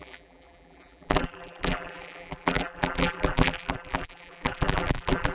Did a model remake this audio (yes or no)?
yes